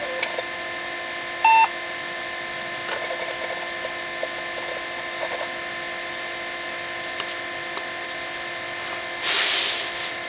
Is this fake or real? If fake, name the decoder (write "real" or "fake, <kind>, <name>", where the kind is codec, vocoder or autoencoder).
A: real